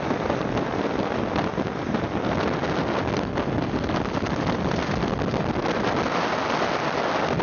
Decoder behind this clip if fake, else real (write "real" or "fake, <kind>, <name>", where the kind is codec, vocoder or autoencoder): real